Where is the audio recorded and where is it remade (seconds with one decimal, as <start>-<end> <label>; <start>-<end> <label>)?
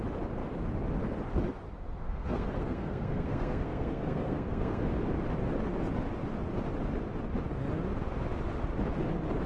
0.0-2.0 recorded; 2.0-4.9 remade; 4.9-9.5 recorded